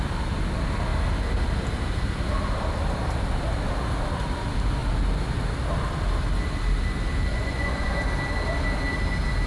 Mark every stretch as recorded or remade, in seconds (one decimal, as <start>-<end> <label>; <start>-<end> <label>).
0.0-7.3 recorded; 7.3-7.9 remade; 7.9-9.5 recorded

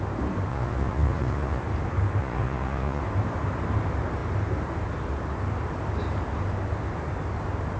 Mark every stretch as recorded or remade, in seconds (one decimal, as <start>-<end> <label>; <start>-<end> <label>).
0.0-0.5 recorded; 0.5-1.6 remade; 1.6-2.2 recorded; 2.2-3.0 remade; 3.0-7.8 recorded

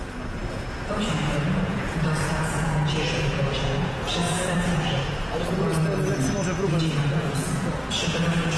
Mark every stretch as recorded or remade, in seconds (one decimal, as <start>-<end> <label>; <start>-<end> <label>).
0.0-5.8 remade; 5.8-6.7 recorded; 6.7-8.6 remade

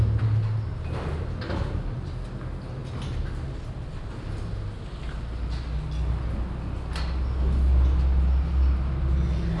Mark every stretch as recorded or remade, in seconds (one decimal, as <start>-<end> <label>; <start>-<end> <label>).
0.0-9.6 recorded

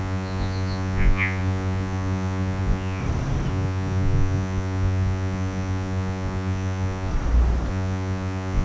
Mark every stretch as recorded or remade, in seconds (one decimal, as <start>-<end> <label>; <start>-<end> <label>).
0.0-3.0 remade; 3.0-3.5 recorded; 3.5-7.1 remade; 7.1-7.7 recorded; 7.7-8.6 remade

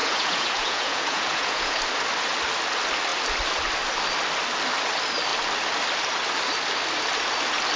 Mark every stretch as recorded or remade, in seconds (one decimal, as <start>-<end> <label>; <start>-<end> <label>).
0.0-1.8 remade; 1.8-7.8 recorded